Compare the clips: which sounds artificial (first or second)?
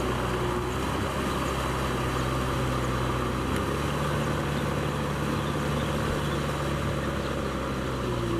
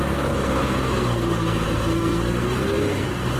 second